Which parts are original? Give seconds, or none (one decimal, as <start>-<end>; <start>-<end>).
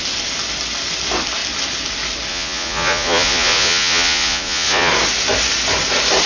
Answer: 0.0-2.3; 4.9-6.3